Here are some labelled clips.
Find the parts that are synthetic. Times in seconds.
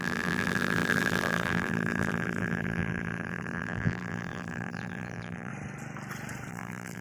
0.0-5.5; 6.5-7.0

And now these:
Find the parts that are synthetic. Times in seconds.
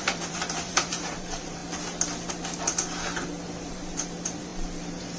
0.0-1.6; 3.7-5.2